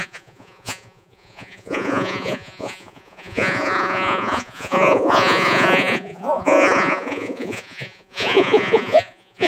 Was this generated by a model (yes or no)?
yes